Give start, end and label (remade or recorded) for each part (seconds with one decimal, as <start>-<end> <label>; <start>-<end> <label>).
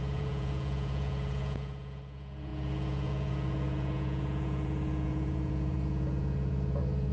0.0-7.1 remade